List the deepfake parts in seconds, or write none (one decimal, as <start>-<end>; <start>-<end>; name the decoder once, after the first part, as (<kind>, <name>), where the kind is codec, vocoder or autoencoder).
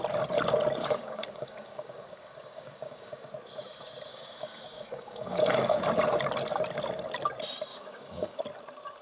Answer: 0.8-3.3 (codec, DAC); 4.1-5.8; 7.7-8.4